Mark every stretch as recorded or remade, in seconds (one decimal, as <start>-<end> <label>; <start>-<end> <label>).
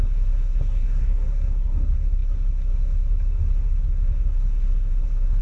0.0-5.4 remade